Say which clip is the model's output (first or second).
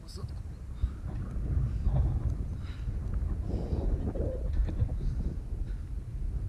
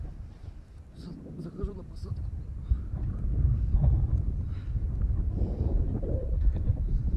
second